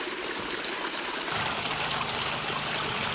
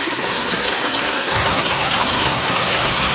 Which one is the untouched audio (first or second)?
first